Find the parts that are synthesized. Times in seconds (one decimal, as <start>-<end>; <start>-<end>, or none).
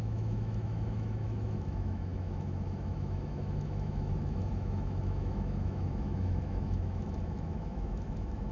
0.0-8.5